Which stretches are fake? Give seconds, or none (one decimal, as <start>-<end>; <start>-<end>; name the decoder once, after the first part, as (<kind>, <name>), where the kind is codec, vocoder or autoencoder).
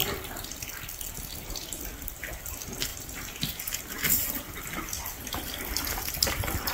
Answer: none